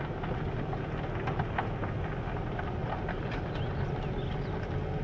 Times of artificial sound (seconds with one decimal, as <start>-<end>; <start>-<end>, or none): none